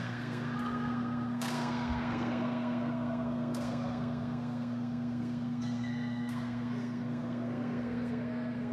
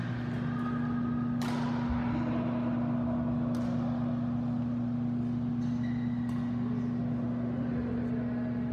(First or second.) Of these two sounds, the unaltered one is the second